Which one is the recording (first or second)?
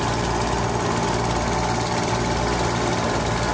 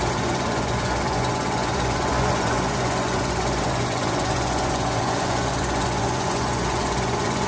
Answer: first